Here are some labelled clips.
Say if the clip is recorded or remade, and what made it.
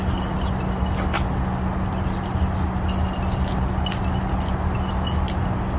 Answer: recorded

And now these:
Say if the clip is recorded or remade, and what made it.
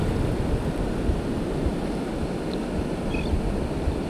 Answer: recorded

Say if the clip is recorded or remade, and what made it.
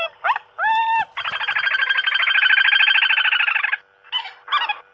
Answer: recorded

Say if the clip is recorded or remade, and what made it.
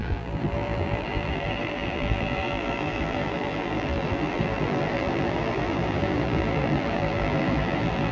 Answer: remade, vocoder, BigVGAN v2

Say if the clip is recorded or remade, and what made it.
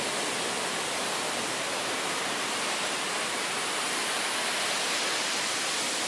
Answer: recorded